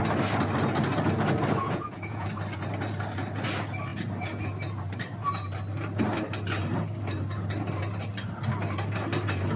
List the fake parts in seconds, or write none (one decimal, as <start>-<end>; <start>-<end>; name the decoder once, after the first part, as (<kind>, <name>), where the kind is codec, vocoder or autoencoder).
1.6-2.3 (vocoder, Vocos)